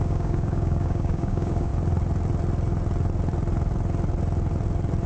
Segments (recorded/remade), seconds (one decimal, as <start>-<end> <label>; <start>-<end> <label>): 0.0-1.7 remade; 1.7-5.1 recorded